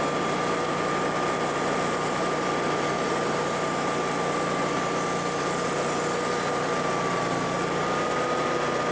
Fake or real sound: real